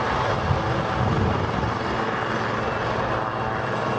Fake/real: real